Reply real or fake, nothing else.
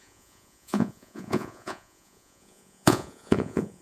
fake